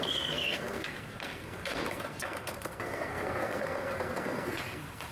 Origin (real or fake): fake